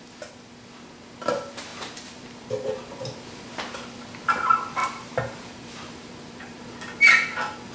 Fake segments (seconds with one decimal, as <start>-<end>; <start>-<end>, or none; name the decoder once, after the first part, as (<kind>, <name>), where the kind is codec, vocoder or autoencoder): 1.7-3.4 (vocoder, BigVGAN v2); 4.8-6.6